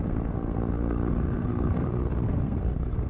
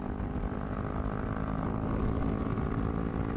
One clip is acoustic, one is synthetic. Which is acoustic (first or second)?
second